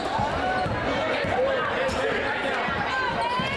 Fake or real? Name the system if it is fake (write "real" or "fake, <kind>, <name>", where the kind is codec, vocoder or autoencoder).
real